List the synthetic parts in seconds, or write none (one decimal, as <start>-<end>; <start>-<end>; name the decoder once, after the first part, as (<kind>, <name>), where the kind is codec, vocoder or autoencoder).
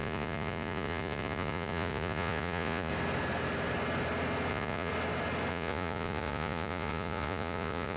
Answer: 0.0-2.9 (vocoder, Vocos); 4.5-4.9; 5.5-8.0